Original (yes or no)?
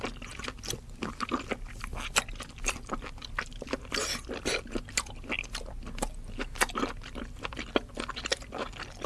yes